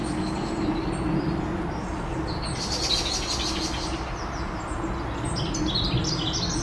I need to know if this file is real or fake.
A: real